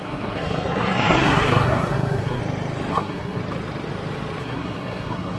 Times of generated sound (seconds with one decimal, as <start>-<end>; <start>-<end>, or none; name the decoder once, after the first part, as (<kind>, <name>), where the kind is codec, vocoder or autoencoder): 0.0-2.4 (codec, SNAC); 2.9-3.4; 4.4-5.4